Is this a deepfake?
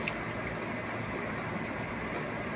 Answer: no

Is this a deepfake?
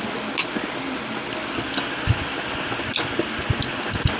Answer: no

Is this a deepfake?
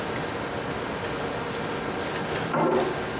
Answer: no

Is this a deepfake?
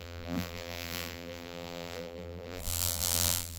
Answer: yes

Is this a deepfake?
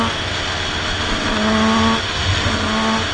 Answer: no